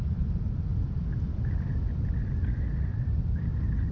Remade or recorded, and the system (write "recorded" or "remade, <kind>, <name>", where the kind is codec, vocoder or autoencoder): recorded